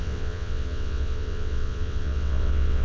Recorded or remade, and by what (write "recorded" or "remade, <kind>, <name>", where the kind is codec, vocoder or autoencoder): remade, vocoder, WaveNeXt